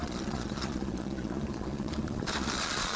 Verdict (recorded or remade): remade